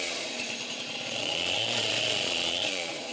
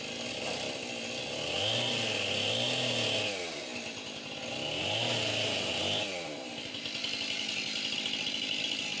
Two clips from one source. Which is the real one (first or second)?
second